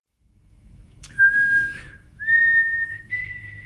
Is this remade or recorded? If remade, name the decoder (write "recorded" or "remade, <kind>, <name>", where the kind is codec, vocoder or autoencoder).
remade, autoencoder, DAC-VAE